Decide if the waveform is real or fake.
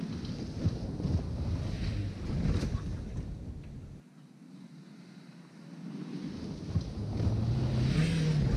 real